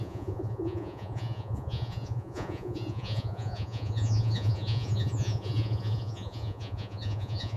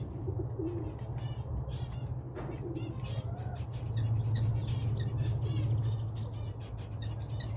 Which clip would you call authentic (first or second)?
second